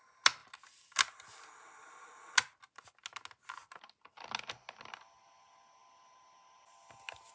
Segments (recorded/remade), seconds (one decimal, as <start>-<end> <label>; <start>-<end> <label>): 0.0-7.3 recorded